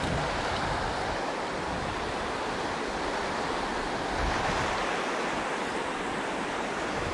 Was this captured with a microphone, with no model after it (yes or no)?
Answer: yes